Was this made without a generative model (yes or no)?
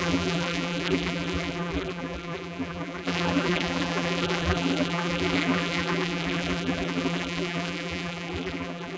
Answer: no